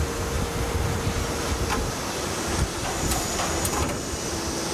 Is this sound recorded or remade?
recorded